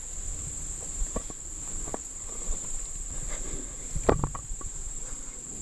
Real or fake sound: fake